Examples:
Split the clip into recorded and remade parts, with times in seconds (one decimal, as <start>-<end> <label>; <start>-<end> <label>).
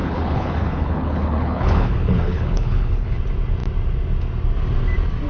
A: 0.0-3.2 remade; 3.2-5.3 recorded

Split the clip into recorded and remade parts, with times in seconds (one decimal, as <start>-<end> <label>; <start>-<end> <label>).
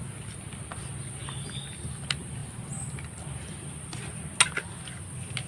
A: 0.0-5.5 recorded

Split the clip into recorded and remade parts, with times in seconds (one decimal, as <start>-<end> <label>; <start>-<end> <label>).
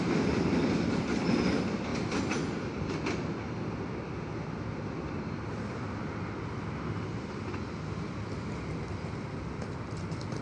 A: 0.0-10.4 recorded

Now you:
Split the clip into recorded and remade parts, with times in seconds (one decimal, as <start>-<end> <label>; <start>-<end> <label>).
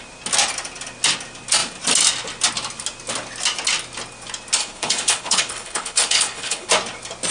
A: 0.0-4.6 recorded; 4.6-6.7 remade; 6.7-7.3 recorded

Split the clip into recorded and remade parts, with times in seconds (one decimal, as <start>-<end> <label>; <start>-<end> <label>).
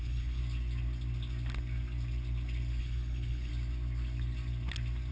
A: 0.0-0.4 remade; 0.4-2.8 recorded; 2.8-3.5 remade; 3.5-5.1 recorded